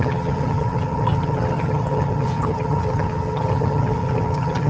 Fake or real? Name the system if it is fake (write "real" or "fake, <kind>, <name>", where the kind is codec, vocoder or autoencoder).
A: fake, vocoder, HiFi-GAN